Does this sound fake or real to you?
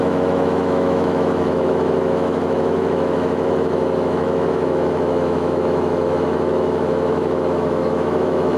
fake